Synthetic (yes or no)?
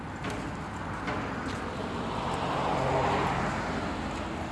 no